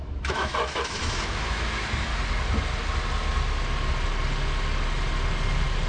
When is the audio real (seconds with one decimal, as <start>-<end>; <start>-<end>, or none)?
2.1-5.9